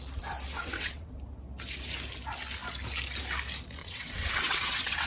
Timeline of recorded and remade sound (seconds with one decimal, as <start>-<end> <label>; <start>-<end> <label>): 0.0-0.5 recorded; 0.5-1.1 remade; 1.1-3.8 recorded; 3.8-5.1 remade